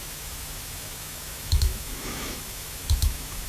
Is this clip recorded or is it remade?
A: remade